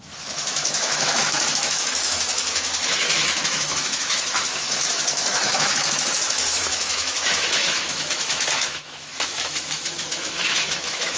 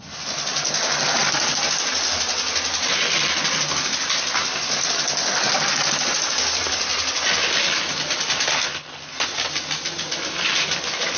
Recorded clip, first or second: second